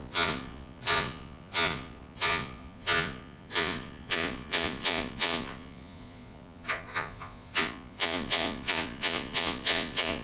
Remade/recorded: remade